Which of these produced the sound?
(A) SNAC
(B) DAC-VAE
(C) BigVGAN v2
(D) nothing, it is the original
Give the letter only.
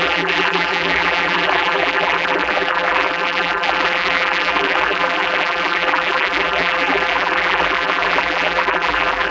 C